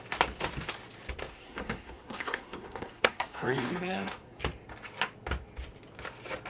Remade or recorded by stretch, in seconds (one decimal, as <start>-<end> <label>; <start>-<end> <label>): 0.0-1.3 recorded; 1.3-4.4 remade; 4.4-6.5 recorded